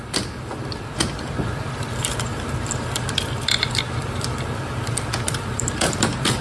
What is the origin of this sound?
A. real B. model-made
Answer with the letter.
B